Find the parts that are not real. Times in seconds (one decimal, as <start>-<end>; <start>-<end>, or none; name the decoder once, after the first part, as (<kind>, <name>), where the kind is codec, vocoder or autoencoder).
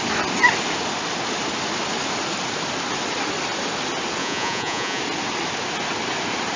4.2-5.0 (vocoder, Vocos)